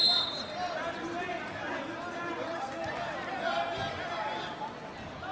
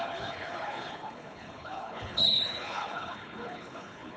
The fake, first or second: second